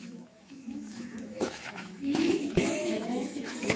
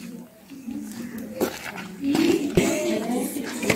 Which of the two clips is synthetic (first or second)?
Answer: first